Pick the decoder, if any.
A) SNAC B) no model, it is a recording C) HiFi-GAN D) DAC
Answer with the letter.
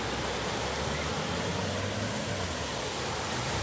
B